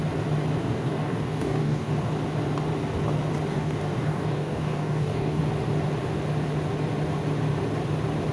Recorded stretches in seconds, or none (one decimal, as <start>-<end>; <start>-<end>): 0.0-0.6; 1.9-3.5; 5.4-8.3